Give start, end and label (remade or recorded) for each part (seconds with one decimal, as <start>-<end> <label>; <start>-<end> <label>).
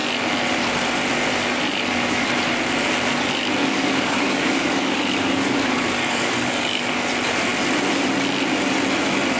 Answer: 0.0-3.6 recorded; 3.6-7.0 remade; 7.0-9.4 recorded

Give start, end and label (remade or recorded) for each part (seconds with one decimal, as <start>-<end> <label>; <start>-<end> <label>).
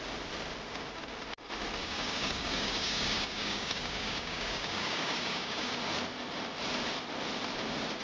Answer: 0.0-1.8 recorded; 1.8-5.7 remade; 5.7-8.0 recorded